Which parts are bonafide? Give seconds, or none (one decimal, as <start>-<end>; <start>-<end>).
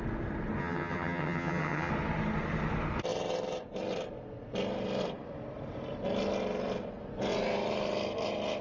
0.0-0.6; 1.9-8.6